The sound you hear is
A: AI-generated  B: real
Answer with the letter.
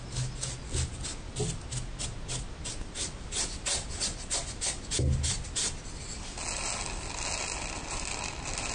B